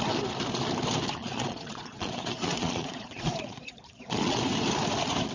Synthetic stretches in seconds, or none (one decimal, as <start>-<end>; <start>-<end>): 1.2-4.4